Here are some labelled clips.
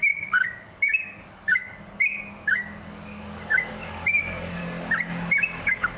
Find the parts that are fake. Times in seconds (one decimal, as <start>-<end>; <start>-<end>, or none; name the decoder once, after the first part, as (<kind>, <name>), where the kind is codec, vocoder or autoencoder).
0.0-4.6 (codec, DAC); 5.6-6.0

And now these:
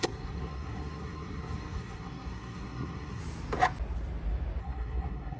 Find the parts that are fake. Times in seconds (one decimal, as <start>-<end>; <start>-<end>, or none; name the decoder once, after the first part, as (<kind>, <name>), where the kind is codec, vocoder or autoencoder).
0.0-3.2 (codec, SNAC); 4.6-5.4

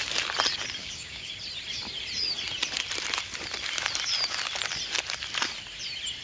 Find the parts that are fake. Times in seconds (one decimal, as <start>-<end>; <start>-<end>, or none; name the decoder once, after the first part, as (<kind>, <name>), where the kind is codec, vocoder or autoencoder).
0.8-1.3 (codec, DAC)

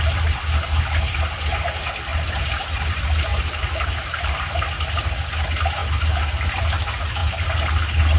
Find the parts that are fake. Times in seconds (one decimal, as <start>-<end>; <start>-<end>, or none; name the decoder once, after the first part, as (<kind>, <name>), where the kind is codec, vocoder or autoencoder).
3.3-3.9 (vocoder, BigVGAN v2)